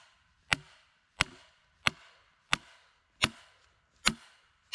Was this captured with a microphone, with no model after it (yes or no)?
yes